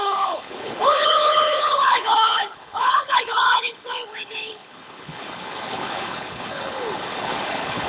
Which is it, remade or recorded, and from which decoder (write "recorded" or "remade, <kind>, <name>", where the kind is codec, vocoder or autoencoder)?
remade, codec, HILCodec